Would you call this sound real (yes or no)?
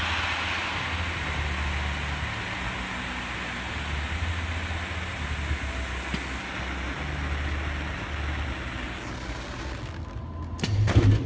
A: yes